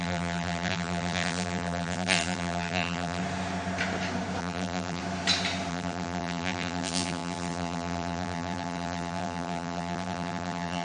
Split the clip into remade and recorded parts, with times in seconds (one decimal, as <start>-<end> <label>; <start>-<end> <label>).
0.0-3.2 remade; 3.2-4.4 recorded; 4.4-5.0 remade; 5.0-5.7 recorded; 5.7-10.8 remade